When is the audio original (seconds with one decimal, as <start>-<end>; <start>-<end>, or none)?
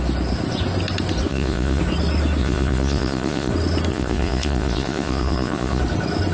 0.0-1.3; 1.8-2.4; 3.5-3.9; 5.8-6.3